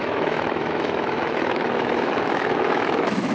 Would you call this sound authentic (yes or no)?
no